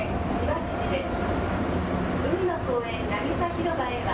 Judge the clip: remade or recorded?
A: recorded